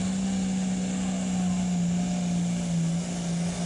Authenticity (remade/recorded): recorded